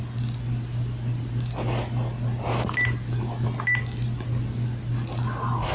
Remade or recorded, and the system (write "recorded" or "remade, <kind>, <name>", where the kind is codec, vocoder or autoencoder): recorded